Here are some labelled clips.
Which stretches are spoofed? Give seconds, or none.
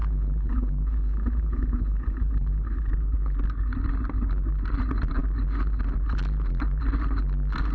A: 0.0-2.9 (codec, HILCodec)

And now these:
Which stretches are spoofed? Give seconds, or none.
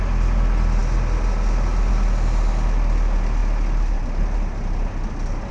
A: none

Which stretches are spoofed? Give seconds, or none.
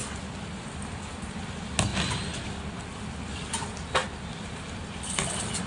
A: 1.9-3.5 (vocoder, BigVGAN v2); 4.0-5.0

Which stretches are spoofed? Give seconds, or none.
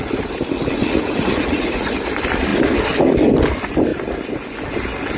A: 0.8-1.9 (vocoder, Vocos)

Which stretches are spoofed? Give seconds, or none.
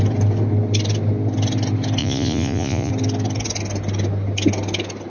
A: 2.0-2.9 (vocoder, Vocos)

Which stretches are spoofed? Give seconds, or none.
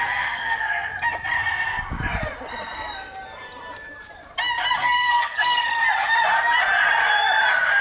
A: 0.0-0.9 (codec, SNAC); 4.8-5.8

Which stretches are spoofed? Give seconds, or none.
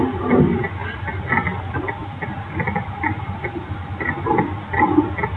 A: none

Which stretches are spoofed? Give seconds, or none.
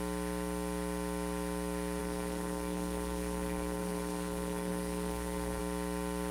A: 2.0-5.6 (codec, SNAC)